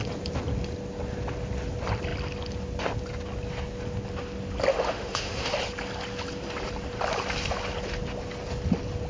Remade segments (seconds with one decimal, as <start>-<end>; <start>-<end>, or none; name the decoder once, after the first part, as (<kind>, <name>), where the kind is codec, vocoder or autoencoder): 4.7-5.5 (autoencoder, DAC-VAE)